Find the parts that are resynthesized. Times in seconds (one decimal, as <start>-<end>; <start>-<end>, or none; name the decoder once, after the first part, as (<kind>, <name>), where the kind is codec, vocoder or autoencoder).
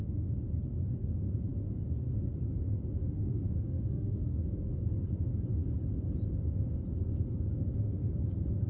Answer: 3.0-4.4 (autoencoder, DAC-VAE)